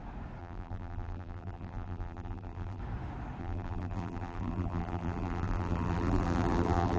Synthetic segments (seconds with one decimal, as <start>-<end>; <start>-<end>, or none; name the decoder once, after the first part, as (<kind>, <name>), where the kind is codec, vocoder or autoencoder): 0.4-2.8 (vocoder, BigVGAN v2); 3.4-7.0